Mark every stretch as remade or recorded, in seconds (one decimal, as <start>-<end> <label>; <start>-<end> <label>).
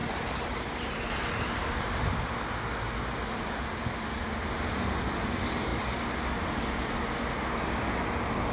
0.0-2.1 remade; 2.1-8.5 recorded